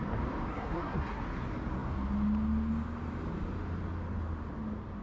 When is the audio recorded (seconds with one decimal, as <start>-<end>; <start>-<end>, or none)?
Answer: 0.0-0.5; 1.2-5.0

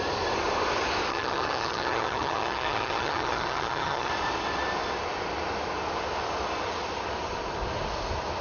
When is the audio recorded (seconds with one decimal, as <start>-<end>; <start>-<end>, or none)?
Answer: 0.0-1.1; 4.1-8.4